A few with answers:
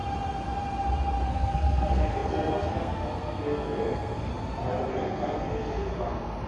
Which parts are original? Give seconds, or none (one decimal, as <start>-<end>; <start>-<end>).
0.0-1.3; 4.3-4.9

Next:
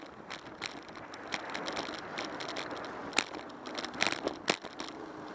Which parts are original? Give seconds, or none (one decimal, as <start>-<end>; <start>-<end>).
0.0-5.3

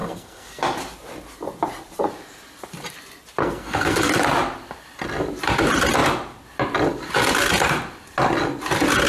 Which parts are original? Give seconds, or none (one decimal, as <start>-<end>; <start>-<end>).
0.6-3.4; 4.1-9.1